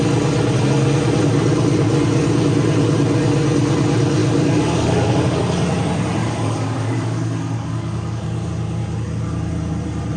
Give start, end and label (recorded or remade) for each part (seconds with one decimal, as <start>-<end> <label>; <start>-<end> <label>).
0.0-4.2 recorded; 4.2-5.4 remade; 5.4-6.2 recorded; 6.2-8.5 remade; 8.5-10.2 recorded